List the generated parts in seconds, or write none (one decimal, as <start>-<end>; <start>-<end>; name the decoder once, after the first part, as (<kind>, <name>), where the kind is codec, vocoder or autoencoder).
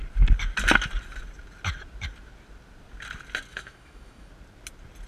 3.5-4.3 (autoencoder, DAC-VAE)